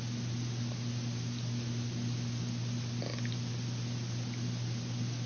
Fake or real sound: real